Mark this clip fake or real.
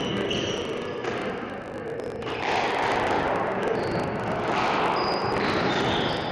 real